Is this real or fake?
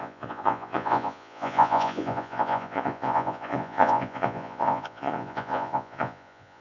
fake